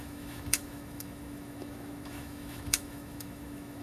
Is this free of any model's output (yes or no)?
no